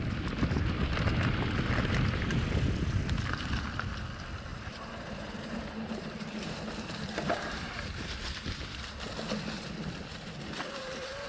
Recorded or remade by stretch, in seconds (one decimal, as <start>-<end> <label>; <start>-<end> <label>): 0.0-4.5 recorded; 4.5-9.1 remade; 9.1-11.3 recorded